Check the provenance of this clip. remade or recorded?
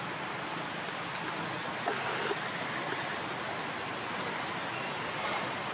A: recorded